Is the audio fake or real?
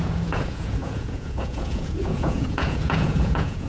fake